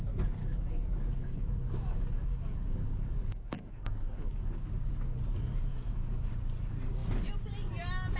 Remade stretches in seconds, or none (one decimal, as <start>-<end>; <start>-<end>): 0.4-4.7; 5.7-6.3